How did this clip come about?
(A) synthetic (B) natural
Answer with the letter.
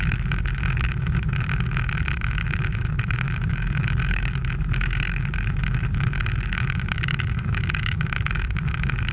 A